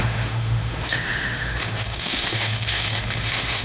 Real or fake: fake